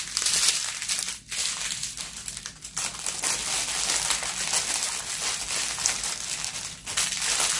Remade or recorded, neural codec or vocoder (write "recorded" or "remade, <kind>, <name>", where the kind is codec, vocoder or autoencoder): recorded